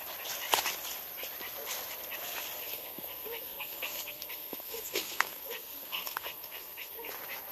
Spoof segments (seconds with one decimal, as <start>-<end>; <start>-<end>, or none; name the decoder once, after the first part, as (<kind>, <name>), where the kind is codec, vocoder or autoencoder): 2.6-7.1 (codec, SNAC)